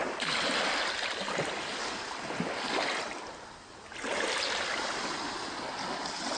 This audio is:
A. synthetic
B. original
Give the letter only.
B